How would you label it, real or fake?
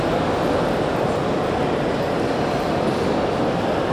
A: real